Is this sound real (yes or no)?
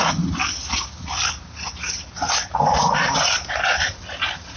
yes